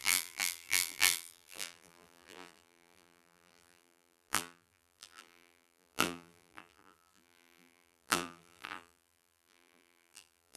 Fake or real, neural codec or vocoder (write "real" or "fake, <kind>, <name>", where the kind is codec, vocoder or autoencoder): fake, vocoder, BigVGAN v2